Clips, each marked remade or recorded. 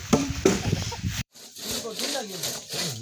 remade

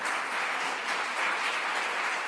recorded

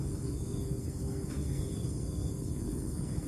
remade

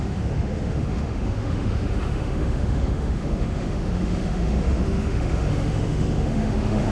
remade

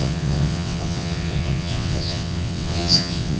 remade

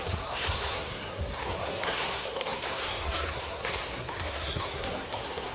remade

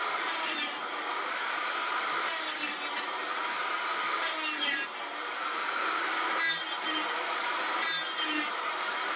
remade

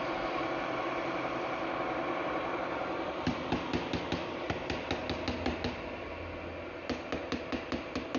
recorded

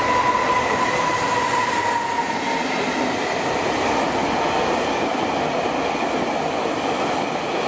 recorded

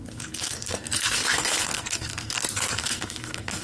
remade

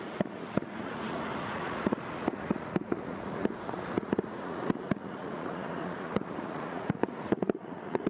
remade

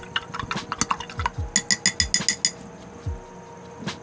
recorded